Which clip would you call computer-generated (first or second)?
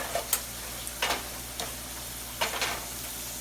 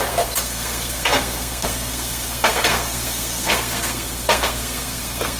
second